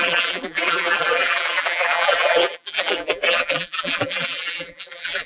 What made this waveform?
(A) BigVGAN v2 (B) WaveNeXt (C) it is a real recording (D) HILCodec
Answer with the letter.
A